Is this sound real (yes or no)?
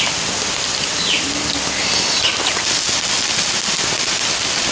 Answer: yes